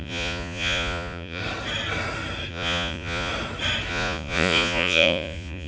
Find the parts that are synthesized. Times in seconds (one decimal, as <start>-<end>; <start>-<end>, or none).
0.0-1.4; 2.5-3.3; 3.9-5.7